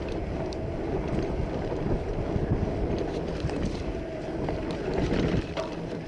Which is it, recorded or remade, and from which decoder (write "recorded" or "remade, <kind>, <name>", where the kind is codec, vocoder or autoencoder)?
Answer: recorded